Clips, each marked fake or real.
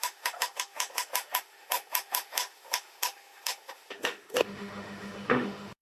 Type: fake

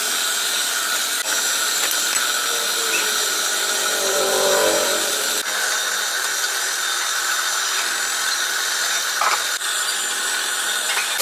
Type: real